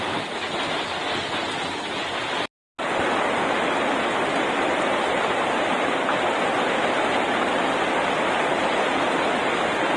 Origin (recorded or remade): recorded